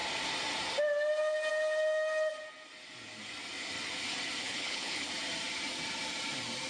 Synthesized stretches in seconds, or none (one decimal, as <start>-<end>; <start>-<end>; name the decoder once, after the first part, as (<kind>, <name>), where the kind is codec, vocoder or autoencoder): 4.4-5.1 (codec, HILCodec)